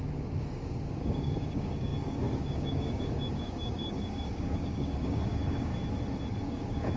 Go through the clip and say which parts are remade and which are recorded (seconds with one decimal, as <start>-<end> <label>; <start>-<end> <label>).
0.0-5.7 remade; 5.7-6.4 recorded; 6.4-7.0 remade